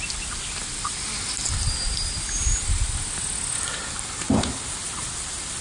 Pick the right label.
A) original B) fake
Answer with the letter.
A